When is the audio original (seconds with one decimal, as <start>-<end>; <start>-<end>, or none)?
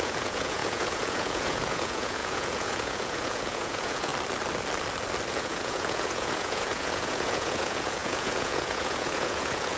4.1-5.3